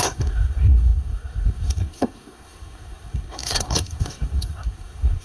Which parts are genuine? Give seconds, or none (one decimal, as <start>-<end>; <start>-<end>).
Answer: none